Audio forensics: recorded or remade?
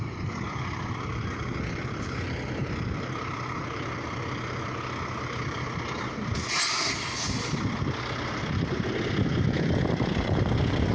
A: remade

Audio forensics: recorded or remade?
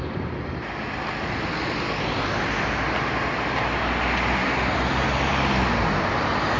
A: recorded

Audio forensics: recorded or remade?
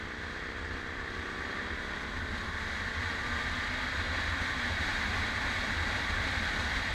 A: remade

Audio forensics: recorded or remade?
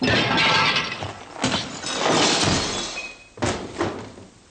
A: recorded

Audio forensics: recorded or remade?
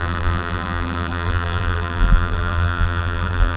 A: remade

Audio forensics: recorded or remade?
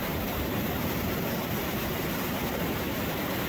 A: remade